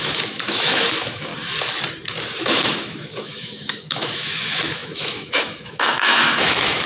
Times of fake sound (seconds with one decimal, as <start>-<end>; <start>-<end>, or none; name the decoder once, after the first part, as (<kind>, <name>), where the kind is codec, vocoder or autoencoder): 0.0-1.3 (autoencoder, DAC-VAE); 2.4-6.9